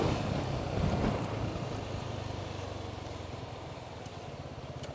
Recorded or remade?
remade